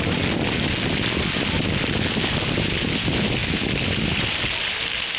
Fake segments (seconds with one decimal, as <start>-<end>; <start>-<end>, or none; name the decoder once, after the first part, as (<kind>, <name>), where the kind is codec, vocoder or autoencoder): none